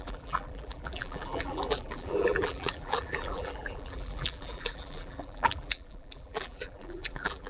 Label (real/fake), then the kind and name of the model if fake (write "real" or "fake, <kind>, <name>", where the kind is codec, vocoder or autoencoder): fake, vocoder, BigVGAN v2